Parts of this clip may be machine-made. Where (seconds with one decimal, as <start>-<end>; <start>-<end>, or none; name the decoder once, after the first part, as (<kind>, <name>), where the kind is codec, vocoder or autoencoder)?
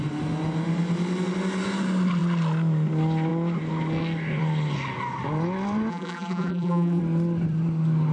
5.9-7.0 (vocoder, BigVGAN v2)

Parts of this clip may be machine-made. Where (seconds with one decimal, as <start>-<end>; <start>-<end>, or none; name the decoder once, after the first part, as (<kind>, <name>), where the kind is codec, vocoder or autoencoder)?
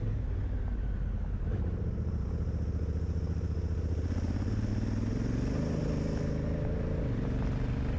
1.5-2.3 (vocoder, BigVGAN v2)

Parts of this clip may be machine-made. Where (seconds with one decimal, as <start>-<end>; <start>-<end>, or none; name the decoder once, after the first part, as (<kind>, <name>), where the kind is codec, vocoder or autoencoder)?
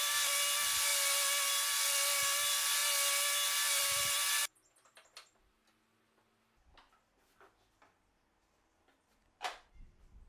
none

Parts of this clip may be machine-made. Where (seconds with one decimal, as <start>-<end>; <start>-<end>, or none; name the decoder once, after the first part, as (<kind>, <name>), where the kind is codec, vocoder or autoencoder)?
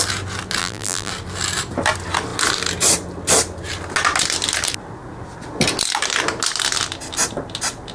0.6-1.1 (vocoder, BigVGAN v2)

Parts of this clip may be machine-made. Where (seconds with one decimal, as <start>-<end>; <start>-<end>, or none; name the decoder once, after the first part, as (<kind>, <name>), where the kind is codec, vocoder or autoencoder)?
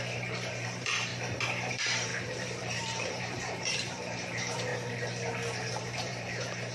0.0-1.1 (vocoder, BigVGAN v2); 1.7-4.7; 5.8-6.7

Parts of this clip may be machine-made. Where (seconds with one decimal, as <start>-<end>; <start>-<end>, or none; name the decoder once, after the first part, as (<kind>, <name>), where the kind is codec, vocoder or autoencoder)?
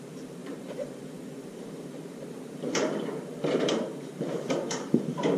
0.0-5.4 (vocoder, BigVGAN v2)